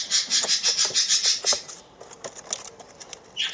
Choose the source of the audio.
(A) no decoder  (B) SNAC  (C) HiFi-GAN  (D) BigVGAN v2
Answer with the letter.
A